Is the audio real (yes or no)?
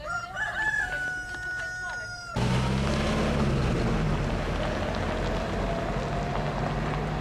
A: yes